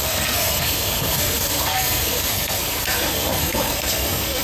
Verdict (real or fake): fake